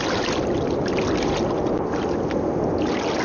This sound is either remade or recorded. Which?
recorded